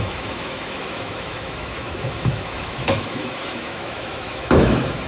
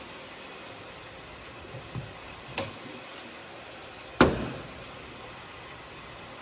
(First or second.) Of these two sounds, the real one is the second